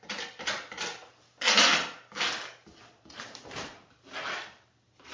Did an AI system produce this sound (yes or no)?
no